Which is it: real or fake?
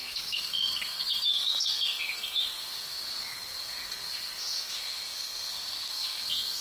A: fake